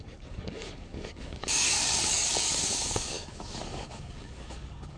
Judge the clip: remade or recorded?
remade